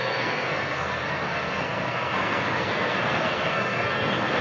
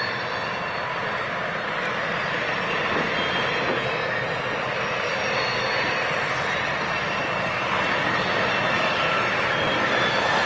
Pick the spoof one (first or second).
first